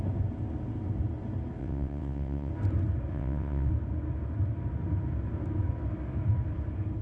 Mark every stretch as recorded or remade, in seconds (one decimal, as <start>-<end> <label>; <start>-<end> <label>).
0.0-1.6 recorded; 1.6-2.5 remade; 2.5-3.1 recorded; 3.1-3.7 remade; 3.7-7.0 recorded